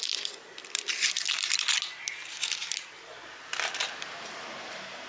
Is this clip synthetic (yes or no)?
no